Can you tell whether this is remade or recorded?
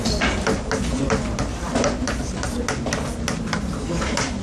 recorded